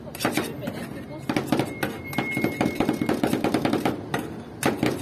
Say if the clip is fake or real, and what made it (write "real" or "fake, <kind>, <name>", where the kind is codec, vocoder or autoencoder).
real